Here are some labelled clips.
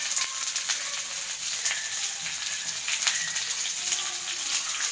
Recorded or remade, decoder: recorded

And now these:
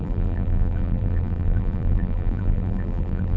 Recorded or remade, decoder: remade, vocoder, BigVGAN v2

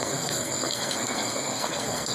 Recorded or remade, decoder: remade, codec, SNAC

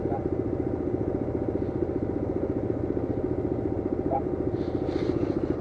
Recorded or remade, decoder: recorded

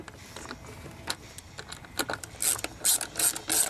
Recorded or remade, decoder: recorded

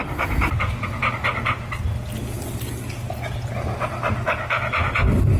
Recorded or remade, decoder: recorded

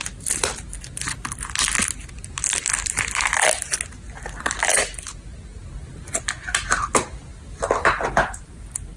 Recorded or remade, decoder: recorded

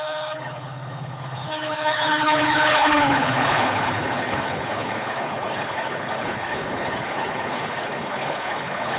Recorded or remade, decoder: remade, codec, HILCodec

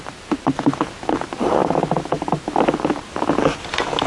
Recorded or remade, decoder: recorded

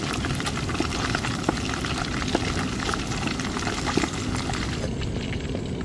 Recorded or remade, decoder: recorded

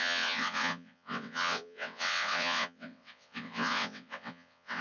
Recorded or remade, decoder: remade, vocoder, WaveNeXt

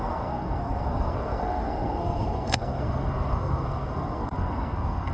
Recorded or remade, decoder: remade, codec, SNAC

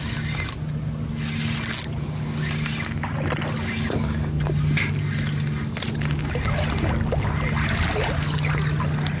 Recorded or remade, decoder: recorded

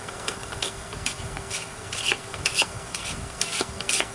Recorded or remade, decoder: remade, codec, SNAC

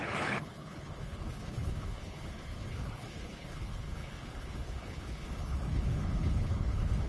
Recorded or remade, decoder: remade, codec, HILCodec